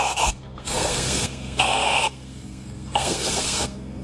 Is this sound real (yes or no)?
no